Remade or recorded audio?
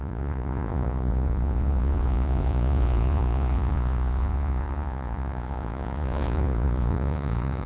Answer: remade